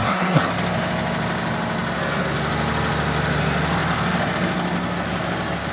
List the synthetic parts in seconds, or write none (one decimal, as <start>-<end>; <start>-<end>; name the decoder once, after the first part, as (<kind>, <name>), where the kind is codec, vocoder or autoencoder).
0.0-0.5 (codec, SNAC)